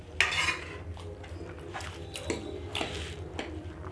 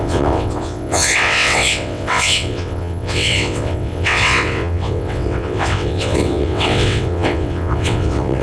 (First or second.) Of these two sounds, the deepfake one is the second